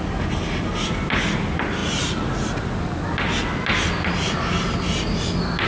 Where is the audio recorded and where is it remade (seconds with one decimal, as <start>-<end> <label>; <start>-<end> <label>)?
0.0-5.7 recorded